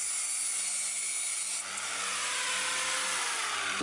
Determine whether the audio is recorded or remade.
recorded